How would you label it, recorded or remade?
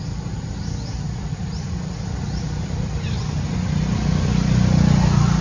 recorded